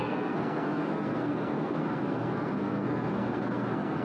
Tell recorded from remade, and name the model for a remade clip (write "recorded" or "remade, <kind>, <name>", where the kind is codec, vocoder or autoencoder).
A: remade, codec, SNAC